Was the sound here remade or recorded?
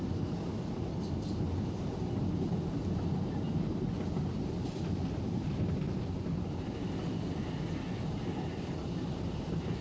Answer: recorded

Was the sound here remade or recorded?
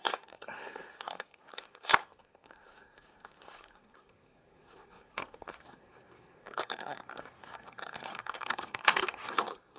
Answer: remade